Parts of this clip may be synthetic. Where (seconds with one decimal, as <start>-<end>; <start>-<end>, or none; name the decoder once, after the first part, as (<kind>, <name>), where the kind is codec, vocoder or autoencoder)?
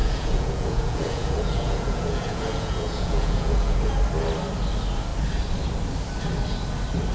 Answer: 0.0-3.9 (vocoder, Vocos)